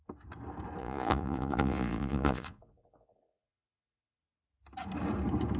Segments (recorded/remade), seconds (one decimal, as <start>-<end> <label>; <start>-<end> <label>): 0.0-0.8 recorded; 0.8-4.2 remade; 4.2-5.6 recorded